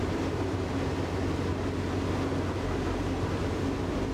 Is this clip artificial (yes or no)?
no